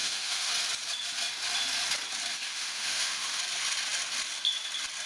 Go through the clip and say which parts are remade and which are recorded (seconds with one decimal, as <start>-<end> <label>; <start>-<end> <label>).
0.0-0.5 remade; 0.5-2.3 recorded; 2.3-3.4 remade; 3.4-5.1 recorded